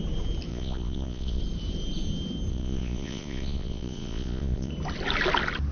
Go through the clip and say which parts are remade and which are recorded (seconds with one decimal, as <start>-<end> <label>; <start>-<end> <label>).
0.0-0.5 recorded; 0.5-1.4 remade; 1.4-2.5 recorded; 2.5-4.7 remade; 4.7-5.7 recorded